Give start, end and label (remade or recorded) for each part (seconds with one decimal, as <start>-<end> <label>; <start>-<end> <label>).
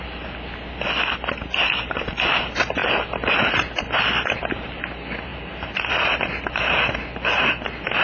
0.0-5.3 recorded; 5.3-5.9 remade; 5.9-8.0 recorded